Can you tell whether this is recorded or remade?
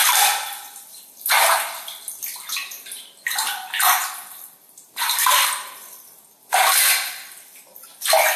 recorded